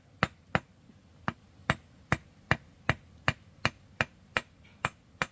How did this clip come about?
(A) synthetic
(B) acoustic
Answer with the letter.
B